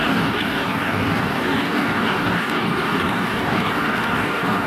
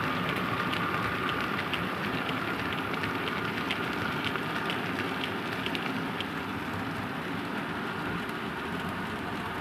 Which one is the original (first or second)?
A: second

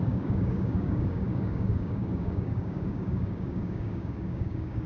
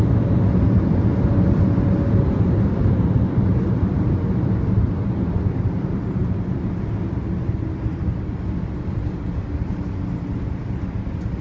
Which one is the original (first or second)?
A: second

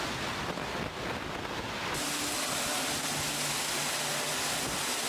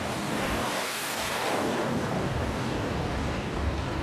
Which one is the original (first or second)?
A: first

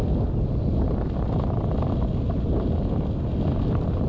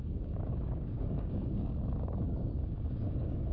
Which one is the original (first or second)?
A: first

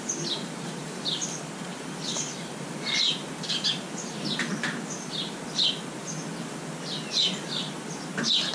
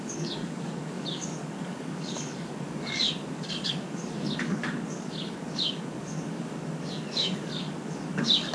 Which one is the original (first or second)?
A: first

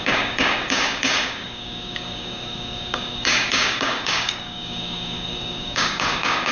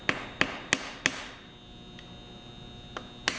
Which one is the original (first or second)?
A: second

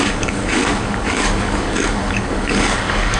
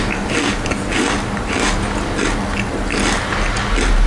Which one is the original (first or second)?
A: second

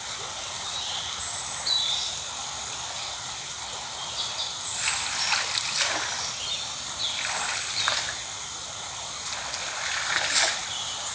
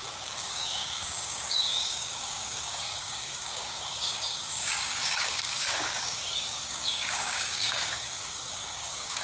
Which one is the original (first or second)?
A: first